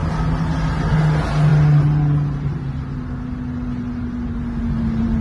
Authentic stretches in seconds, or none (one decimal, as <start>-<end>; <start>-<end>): 0.0-5.2